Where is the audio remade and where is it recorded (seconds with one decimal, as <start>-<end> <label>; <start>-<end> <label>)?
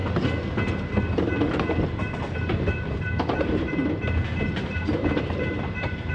0.0-3.4 recorded; 3.4-3.8 remade; 3.8-4.6 recorded; 4.6-6.1 remade